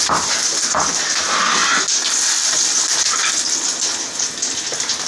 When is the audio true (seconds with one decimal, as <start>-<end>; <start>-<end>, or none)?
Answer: none